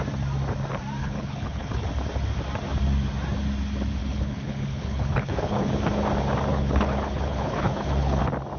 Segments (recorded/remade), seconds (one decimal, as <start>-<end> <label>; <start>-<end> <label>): 0.0-1.0 recorded; 1.0-1.9 remade; 1.9-4.0 recorded; 4.0-5.7 remade; 5.7-6.5 recorded; 6.5-8.2 remade; 8.2-8.6 recorded